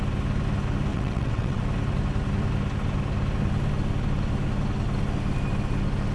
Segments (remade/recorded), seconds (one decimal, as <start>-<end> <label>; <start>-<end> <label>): 0.0-0.9 recorded; 0.9-1.6 remade; 1.6-6.1 recorded